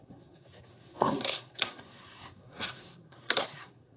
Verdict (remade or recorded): remade